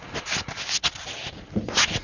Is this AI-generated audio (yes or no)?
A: no